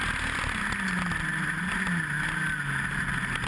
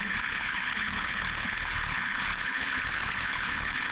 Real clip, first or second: first